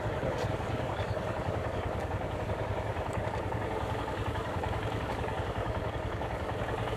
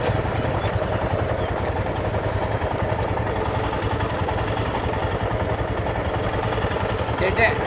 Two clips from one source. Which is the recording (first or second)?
second